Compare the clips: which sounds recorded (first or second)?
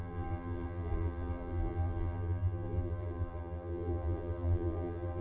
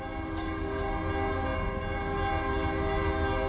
second